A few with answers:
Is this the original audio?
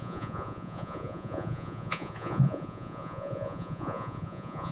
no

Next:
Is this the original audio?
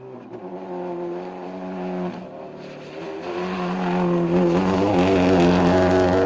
yes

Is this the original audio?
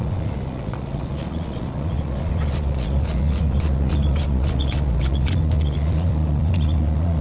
no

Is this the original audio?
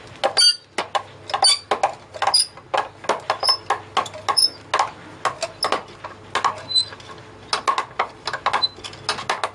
yes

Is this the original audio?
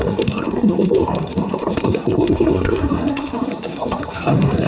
no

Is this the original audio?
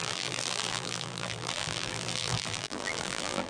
no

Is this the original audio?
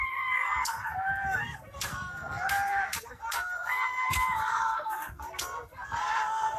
no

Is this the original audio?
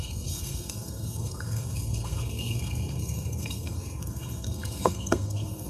no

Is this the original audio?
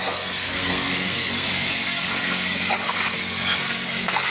no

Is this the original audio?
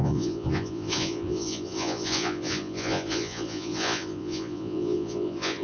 no